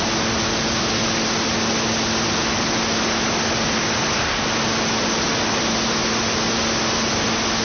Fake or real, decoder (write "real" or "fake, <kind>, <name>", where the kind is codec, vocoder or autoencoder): real